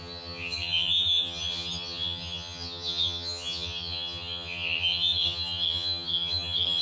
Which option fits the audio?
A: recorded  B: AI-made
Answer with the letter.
B